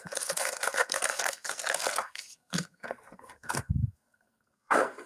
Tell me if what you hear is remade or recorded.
remade